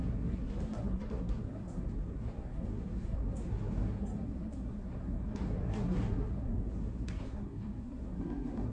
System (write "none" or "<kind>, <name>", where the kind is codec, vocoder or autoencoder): codec, SNAC